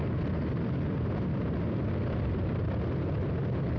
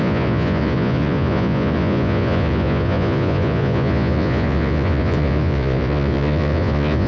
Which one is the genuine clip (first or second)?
first